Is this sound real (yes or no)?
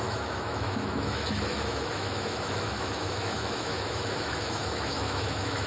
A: no